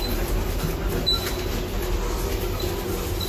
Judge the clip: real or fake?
real